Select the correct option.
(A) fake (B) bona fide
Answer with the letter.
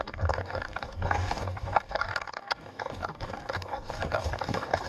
A